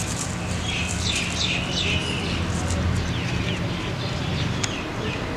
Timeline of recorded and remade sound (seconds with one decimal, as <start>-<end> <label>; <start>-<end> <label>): 0.0-5.4 recorded